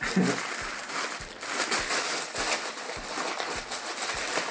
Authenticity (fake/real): fake